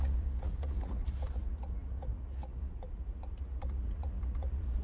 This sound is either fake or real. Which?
fake